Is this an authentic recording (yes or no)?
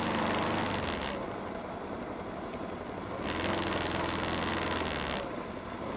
yes